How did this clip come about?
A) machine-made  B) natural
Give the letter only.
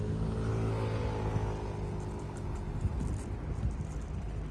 B